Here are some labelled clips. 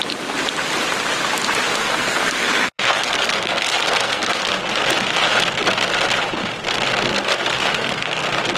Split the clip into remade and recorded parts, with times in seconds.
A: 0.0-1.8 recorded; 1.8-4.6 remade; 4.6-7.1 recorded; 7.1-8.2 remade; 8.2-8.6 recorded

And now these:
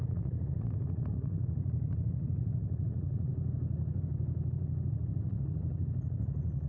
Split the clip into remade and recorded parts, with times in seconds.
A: 0.0-3.3 remade; 3.3-4.9 recorded; 4.9-6.7 remade

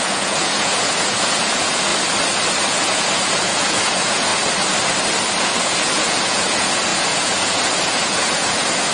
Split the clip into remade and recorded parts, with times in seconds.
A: 0.0-1.9 remade; 1.9-2.7 recorded; 2.7-4.3 remade; 4.3-5.4 recorded; 5.4-8.9 remade